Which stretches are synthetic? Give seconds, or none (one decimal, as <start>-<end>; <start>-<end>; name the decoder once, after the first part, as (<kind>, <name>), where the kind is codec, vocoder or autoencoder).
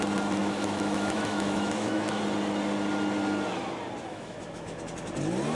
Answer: 0.4-2.2 (autoencoder, DAC-VAE); 4.1-4.8